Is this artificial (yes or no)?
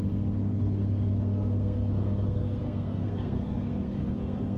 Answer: yes